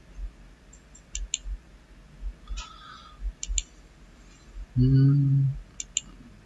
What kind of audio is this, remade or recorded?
recorded